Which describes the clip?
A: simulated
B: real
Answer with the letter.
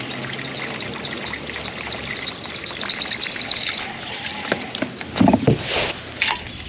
B